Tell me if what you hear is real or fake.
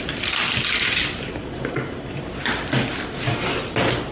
real